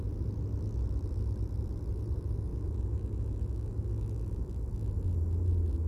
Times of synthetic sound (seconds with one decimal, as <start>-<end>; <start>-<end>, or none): 2.5-4.5